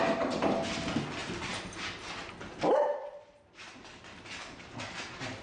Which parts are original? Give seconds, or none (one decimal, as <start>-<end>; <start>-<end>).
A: 0.0-5.4